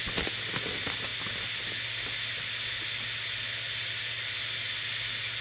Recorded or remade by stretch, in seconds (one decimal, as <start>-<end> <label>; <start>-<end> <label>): 0.0-5.4 recorded